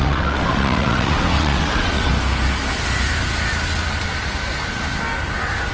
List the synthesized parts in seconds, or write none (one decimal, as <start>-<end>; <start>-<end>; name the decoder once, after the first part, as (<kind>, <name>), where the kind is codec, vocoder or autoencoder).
0.0-2.1 (vocoder, WaveNeXt)